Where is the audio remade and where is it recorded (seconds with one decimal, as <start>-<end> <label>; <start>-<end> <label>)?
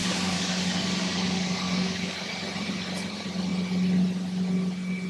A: 0.0-2.3 remade; 2.3-5.1 recorded